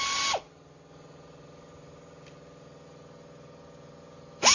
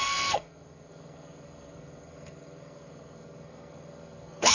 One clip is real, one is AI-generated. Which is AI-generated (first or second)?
second